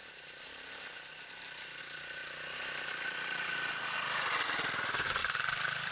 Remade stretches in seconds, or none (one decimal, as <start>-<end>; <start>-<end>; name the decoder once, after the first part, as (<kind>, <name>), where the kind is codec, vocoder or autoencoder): 2.2-3.7 (vocoder, BigVGAN v2); 5.2-5.9